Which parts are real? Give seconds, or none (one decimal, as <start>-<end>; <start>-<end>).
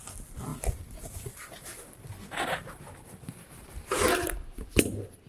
0.0-0.5; 3.6-5.3